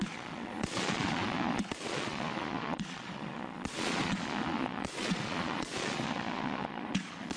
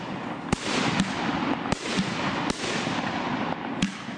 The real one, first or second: second